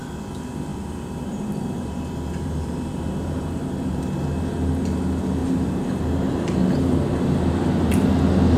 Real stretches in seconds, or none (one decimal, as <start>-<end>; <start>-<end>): 0.0-0.7; 4.0-5.4; 7.9-8.6